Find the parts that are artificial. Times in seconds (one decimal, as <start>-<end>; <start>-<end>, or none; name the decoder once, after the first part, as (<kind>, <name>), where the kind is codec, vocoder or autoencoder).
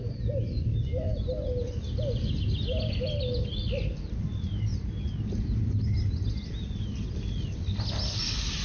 none